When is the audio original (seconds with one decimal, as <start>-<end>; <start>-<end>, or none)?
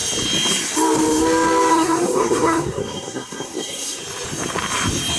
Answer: 0.0-1.7; 4.0-5.2